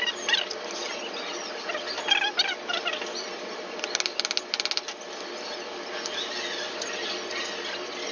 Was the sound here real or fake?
real